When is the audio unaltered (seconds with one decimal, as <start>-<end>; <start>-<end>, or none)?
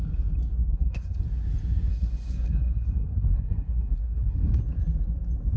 0.0-0.6; 1.2-1.9; 4.6-5.6